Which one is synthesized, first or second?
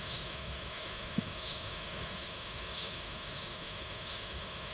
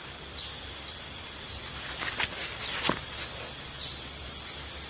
first